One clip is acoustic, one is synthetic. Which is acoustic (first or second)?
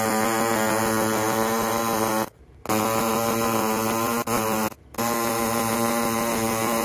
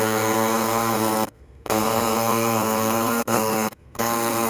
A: first